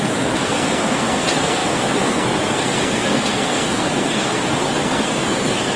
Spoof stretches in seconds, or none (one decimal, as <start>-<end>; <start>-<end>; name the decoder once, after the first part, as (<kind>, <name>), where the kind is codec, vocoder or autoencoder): 0.0-5.8 (codec, SNAC)